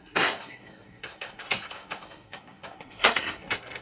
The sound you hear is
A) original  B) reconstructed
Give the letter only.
B